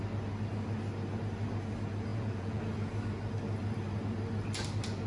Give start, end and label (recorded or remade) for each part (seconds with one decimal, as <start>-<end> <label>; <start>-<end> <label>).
0.0-2.1 recorded; 2.1-2.6 remade; 2.6-5.1 recorded